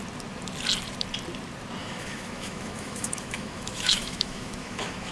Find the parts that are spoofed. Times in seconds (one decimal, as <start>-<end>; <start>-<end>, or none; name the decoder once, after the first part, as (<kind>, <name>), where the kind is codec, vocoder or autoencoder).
1.8-5.1 (autoencoder, DAC-VAE)